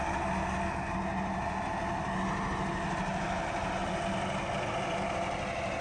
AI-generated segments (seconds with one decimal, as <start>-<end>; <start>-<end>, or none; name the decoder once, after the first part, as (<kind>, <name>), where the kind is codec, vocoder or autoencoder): none